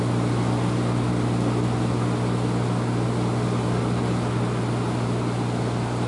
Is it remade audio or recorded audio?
recorded